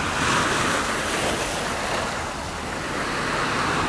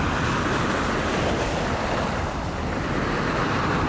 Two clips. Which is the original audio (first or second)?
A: first